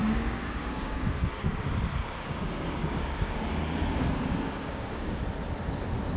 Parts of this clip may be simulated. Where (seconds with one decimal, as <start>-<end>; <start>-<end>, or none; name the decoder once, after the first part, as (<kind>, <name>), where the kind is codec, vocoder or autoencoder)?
0.0-1.6 (codec, DAC); 2.0-5.2